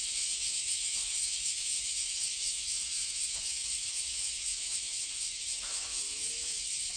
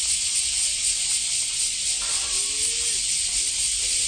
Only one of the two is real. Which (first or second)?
second